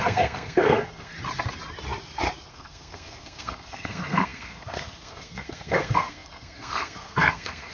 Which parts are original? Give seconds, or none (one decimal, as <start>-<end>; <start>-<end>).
1.1-2.5

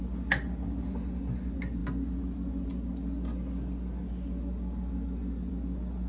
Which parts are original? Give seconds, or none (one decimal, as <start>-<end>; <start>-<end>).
0.0-6.1